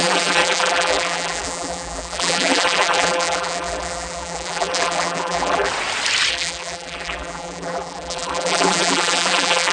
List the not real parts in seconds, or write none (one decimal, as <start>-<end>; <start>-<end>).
0.0-5.7; 6.3-9.7